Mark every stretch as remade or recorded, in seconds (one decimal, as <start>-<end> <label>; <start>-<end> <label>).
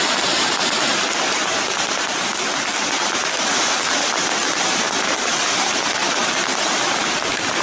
0.0-5.3 remade; 5.3-5.9 recorded; 5.9-7.6 remade